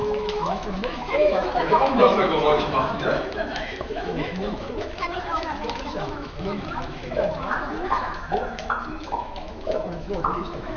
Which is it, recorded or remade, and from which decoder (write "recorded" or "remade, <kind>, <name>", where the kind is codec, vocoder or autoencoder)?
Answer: remade, autoencoder, DAC-VAE